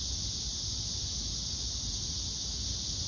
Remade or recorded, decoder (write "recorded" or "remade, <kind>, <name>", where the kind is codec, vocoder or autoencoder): recorded